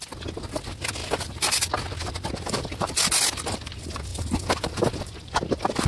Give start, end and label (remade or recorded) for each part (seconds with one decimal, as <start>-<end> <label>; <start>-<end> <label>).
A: 0.0-5.9 recorded